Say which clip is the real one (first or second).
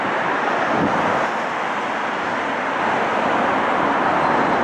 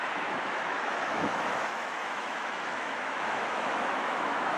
first